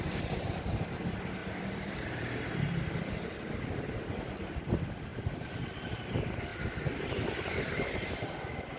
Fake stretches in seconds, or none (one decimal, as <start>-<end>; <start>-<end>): 1.4-2.4; 5.1-5.8